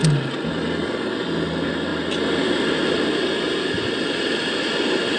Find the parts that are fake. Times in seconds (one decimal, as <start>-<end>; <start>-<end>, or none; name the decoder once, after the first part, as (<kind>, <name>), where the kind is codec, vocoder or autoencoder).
none